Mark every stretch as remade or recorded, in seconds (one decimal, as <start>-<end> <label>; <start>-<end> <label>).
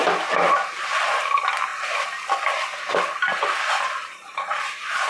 0.0-4.0 recorded; 4.0-4.6 remade; 4.6-5.1 recorded